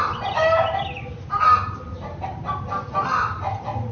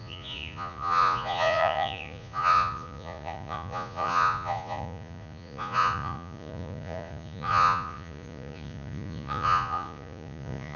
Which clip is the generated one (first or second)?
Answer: second